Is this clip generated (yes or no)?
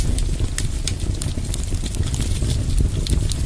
no